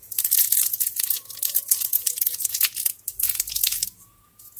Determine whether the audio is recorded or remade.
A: remade